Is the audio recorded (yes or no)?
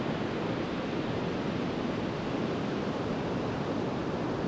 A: yes